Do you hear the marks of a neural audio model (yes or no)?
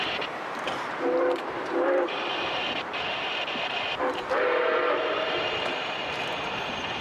yes